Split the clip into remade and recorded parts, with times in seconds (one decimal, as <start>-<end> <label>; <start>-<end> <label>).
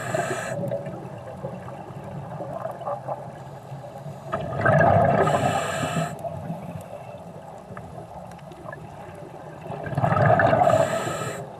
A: 0.0-6.6 recorded; 6.6-8.1 remade; 8.1-11.6 recorded